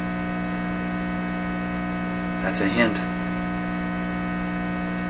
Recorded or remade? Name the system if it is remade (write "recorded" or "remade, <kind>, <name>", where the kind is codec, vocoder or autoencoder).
recorded